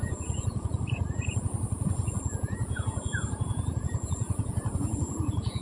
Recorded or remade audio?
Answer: remade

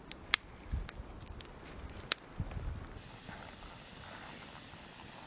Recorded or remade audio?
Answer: recorded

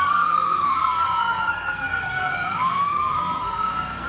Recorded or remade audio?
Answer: remade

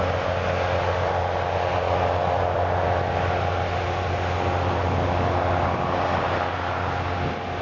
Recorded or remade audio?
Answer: recorded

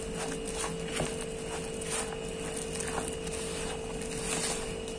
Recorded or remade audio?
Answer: recorded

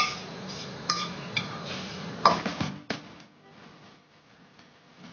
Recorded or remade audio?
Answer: recorded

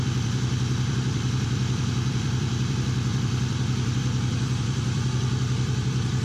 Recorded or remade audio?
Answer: remade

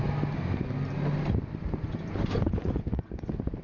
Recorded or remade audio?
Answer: recorded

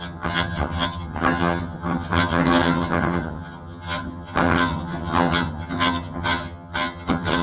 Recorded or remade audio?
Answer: remade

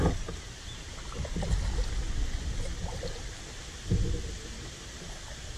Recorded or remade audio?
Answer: recorded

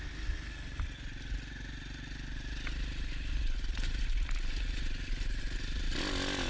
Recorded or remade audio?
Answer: recorded